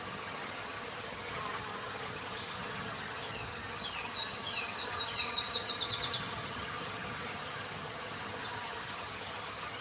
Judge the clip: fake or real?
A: fake